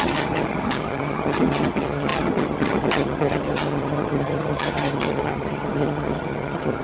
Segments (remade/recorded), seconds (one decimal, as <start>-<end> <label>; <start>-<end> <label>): 0.0-6.8 remade